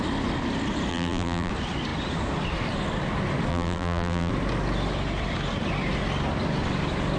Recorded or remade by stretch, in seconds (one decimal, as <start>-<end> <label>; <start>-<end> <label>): 0.0-0.9 recorded; 0.9-1.5 remade; 1.5-3.5 recorded; 3.5-4.3 remade; 4.3-7.2 recorded